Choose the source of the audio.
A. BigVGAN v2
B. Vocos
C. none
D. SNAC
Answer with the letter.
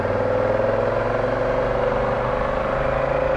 C